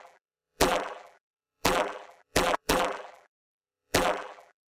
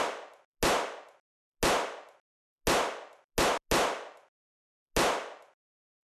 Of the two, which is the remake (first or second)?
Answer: first